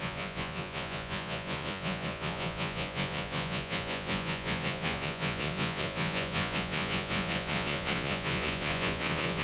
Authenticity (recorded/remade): remade